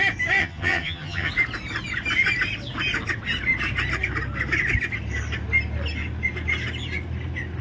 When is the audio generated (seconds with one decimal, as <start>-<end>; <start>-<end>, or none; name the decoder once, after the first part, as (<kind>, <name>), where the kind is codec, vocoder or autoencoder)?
0.4-1.3 (vocoder, HiFi-GAN)